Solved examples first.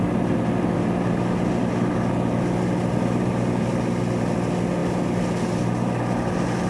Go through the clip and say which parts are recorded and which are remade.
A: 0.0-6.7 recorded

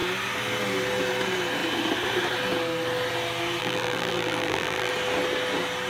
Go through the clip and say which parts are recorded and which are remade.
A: 0.0-3.6 recorded; 3.6-4.9 remade; 4.9-5.9 recorded

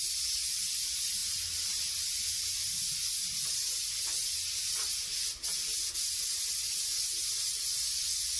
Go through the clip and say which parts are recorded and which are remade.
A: 0.0-8.4 recorded

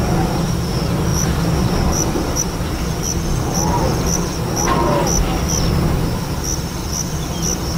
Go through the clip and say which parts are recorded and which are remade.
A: 0.0-1.1 recorded; 1.1-2.4 remade; 2.4-7.8 recorded

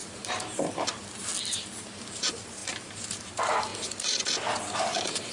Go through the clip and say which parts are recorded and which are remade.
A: 0.0-1.3 remade; 1.3-1.8 recorded; 1.8-3.7 remade; 3.7-4.8 recorded; 4.8-5.3 remade

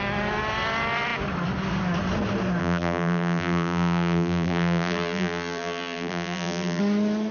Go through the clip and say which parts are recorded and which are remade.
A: 0.0-2.6 recorded; 2.6-6.8 remade; 6.8-7.3 recorded

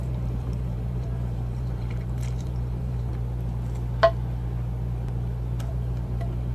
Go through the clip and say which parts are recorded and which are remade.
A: 0.0-3.1 remade; 3.1-5.7 recorded; 5.7-6.5 remade

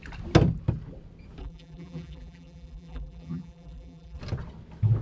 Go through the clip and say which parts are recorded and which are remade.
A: 0.0-1.4 recorded; 1.4-4.2 remade; 4.2-5.0 recorded